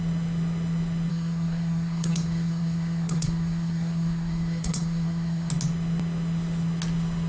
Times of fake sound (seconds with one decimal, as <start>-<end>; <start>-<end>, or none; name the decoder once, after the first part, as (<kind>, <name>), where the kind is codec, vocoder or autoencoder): 1.1-5.5 (codec, SNAC)